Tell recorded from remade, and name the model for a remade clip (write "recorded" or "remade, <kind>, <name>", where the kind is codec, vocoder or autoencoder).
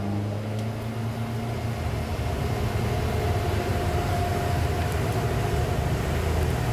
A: recorded